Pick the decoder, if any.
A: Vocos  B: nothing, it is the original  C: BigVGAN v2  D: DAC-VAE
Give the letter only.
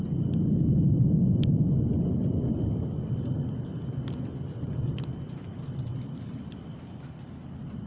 B